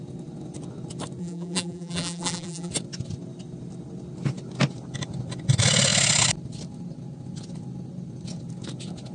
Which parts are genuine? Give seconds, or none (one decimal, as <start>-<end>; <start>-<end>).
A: 0.0-1.2; 2.7-9.1